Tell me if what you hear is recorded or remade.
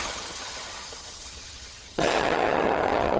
remade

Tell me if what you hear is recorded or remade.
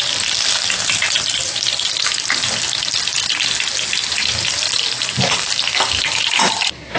recorded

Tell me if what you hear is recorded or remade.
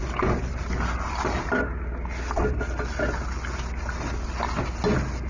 recorded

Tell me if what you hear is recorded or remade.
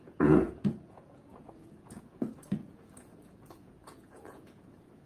remade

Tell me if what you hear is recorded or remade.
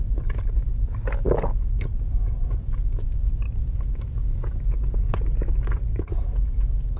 recorded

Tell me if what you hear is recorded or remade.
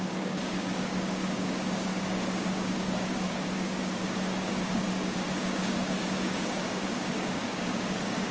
remade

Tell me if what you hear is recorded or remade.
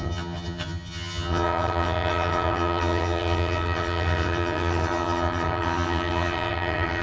remade